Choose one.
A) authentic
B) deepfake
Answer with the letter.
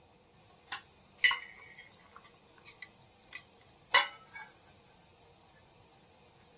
A